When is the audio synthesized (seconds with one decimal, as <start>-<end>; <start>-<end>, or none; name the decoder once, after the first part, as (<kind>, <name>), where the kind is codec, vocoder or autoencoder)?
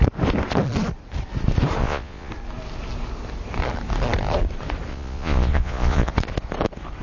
1.8-2.3 (vocoder, Vocos); 4.9-6.1